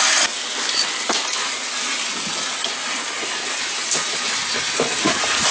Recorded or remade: recorded